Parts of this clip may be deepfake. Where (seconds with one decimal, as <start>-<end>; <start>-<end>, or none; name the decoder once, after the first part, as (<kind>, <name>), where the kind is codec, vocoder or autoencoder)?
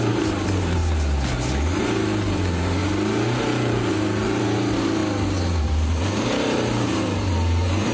0.0-0.8 (vocoder, BigVGAN v2); 1.8-2.8; 3.4-5.0; 5.6-7.9